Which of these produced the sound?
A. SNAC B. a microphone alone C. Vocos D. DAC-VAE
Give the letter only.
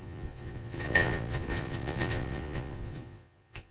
C